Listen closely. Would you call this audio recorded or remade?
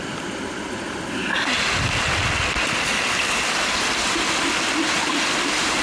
recorded